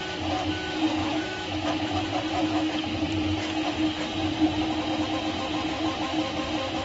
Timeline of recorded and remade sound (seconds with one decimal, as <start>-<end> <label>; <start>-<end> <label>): 0.0-1.0 recorded; 1.0-2.0 remade; 2.0-2.4 recorded; 2.4-3.0 remade; 3.0-6.8 recorded